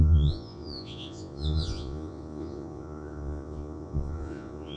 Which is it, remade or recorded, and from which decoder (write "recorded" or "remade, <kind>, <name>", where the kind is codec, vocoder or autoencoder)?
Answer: remade, vocoder, Vocos